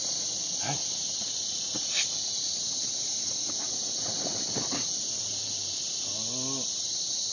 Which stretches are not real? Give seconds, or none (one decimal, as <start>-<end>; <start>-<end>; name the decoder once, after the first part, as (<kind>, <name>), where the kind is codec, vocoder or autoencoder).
none